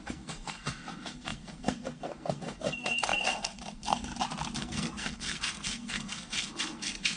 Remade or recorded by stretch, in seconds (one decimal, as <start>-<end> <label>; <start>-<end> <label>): 0.0-4.1 remade; 4.1-4.6 recorded; 4.6-7.2 remade